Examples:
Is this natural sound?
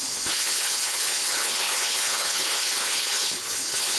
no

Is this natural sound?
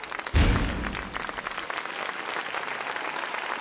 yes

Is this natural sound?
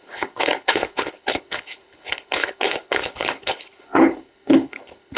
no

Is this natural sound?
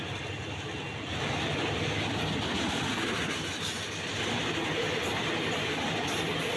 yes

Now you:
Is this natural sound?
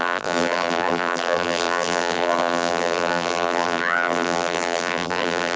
no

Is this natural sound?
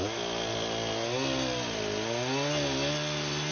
yes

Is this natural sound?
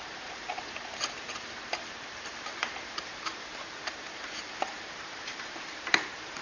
no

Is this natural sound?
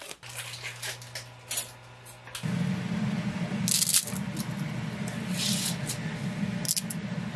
yes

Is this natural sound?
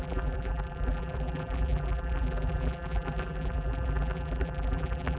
no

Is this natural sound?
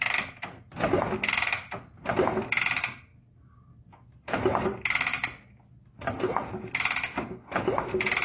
yes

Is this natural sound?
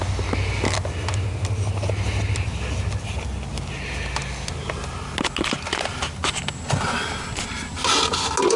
yes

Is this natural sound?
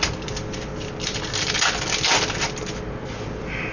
yes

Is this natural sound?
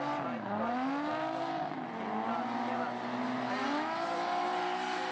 yes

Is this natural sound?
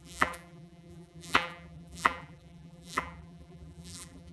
no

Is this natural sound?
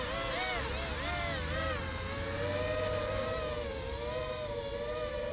yes